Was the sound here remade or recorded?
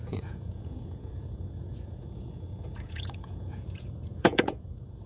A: remade